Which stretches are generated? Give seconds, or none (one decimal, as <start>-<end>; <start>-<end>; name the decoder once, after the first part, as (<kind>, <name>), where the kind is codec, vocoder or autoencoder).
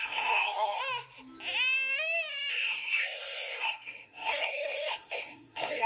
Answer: 0.0-0.8 (codec, SNAC); 2.5-5.9